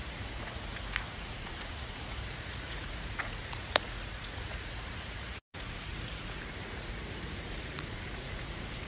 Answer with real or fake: fake